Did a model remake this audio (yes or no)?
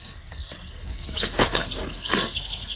yes